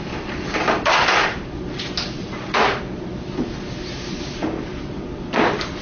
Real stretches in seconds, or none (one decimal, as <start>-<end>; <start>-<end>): 0.0-2.2; 2.8-5.8